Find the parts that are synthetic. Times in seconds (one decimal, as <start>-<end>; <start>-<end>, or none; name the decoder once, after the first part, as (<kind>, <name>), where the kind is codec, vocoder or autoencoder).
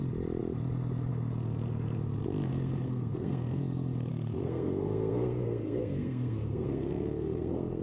2.5-3.6 (codec, SNAC); 4.1-7.8